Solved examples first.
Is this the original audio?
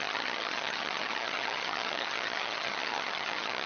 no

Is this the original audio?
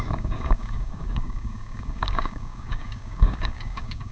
no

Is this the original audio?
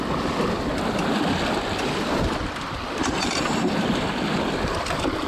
yes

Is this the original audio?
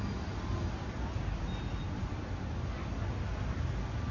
yes